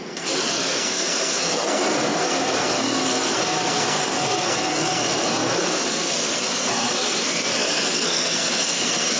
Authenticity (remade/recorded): remade